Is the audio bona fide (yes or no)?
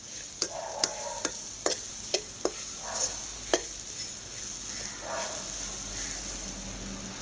yes